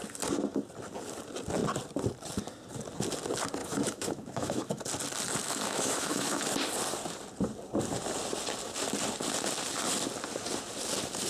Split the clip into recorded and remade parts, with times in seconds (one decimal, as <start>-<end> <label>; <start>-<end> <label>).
0.0-3.6 recorded; 3.6-4.8 remade; 4.8-5.4 recorded; 5.4-6.5 remade; 6.5-11.3 recorded